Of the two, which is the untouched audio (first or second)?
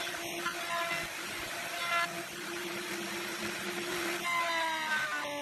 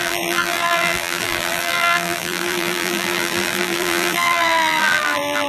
first